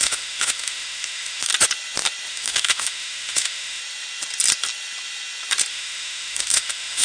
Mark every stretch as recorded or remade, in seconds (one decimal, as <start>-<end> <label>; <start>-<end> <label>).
0.0-1.5 remade; 1.5-2.3 recorded; 2.3-3.8 remade; 3.8-5.7 recorded; 5.7-7.0 remade